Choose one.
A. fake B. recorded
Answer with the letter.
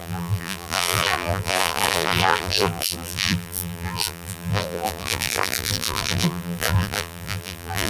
A